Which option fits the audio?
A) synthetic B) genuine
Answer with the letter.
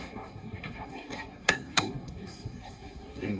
A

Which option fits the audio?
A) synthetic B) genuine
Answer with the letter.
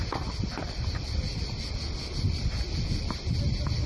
B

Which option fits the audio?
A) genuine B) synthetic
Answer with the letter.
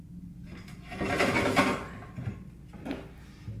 A